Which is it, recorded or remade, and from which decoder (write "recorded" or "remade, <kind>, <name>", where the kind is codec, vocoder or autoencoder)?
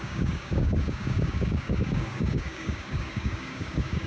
remade, codec, DAC